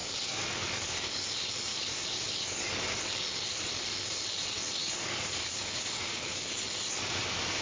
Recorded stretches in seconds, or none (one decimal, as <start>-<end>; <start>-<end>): 1.2-1.7; 3.0-4.8; 6.5-7.6